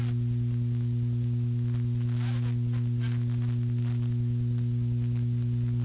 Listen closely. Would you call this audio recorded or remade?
recorded